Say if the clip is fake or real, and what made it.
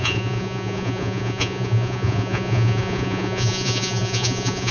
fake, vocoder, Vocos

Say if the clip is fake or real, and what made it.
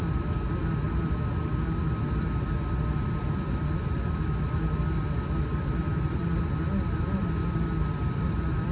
real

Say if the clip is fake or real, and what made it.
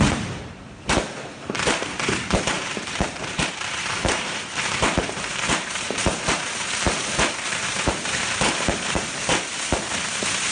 fake, vocoder, BigVGAN v2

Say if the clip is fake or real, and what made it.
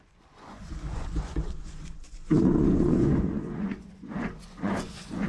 fake, vocoder, Vocos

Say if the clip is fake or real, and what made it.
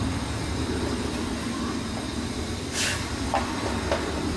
real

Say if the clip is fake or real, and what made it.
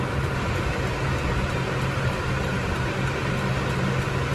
real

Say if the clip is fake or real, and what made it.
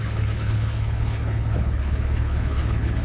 fake, codec, HILCodec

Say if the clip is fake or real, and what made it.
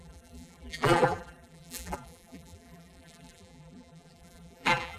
fake, vocoder, BigVGAN v2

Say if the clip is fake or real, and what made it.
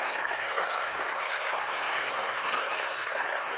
fake, codec, SNAC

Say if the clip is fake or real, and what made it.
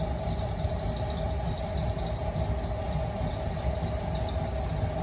real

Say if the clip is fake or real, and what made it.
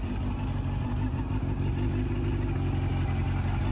fake, vocoder, BigVGAN v2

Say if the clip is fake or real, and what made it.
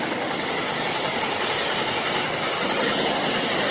real